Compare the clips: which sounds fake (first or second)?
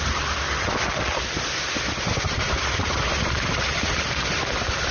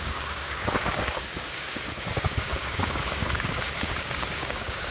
second